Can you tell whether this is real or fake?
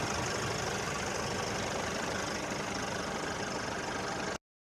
real